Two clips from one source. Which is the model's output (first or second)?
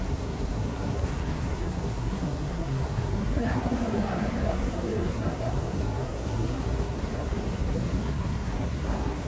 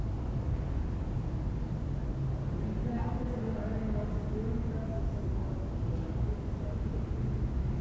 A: first